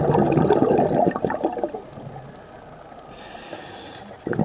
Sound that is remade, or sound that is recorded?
recorded